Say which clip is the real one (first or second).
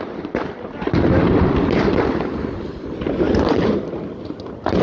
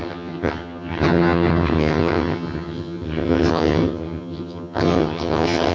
first